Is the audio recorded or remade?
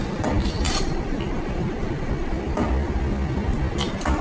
recorded